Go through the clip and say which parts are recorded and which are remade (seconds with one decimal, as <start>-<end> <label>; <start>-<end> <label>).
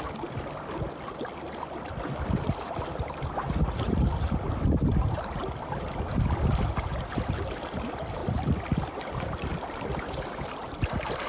0.0-11.3 recorded